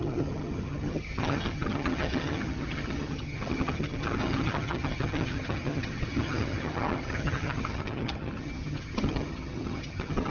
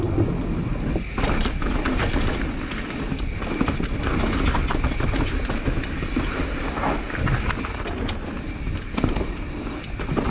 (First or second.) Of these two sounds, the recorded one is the second